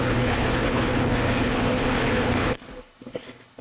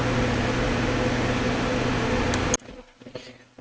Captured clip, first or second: second